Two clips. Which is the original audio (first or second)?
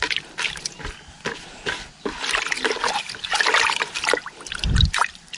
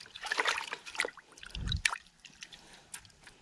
first